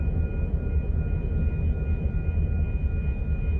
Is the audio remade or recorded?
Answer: recorded